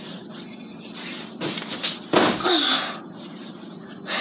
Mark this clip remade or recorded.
recorded